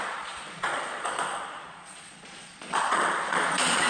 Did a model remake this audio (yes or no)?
yes